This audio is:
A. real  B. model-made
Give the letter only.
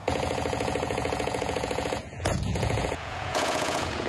B